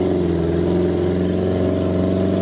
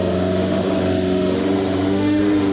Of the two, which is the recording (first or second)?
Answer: first